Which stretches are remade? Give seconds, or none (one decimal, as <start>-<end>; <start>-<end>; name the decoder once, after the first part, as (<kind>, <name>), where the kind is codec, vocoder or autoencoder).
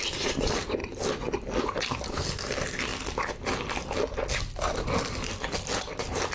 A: 0.0-0.8 (vocoder, BigVGAN v2); 1.6-2.9; 5.0-6.3